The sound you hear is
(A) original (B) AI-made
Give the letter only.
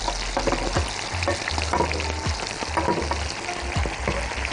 A